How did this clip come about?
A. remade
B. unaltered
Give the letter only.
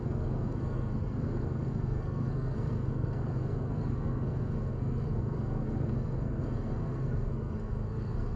A